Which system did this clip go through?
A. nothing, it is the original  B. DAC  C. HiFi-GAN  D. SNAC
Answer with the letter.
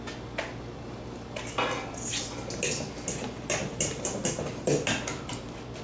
A